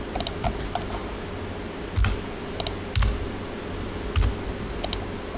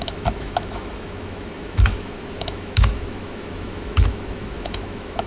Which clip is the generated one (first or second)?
second